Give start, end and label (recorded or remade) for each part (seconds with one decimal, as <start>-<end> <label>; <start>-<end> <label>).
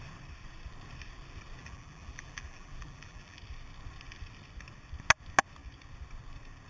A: 0.0-1.6 recorded; 1.6-3.4 remade; 3.4-6.7 recorded